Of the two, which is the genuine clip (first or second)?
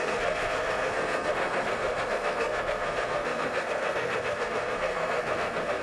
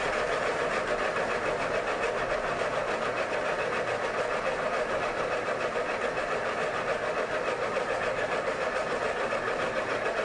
second